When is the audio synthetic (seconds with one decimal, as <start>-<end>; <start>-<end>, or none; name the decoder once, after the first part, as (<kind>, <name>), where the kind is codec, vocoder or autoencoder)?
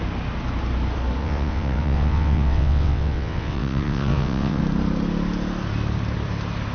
1.2-4.6 (vocoder, WaveNeXt)